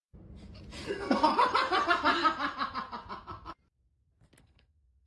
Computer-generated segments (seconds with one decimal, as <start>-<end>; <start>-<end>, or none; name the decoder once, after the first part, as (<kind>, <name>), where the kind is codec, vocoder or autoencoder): 0.9-1.3 (codec, SNAC); 4.4-5.1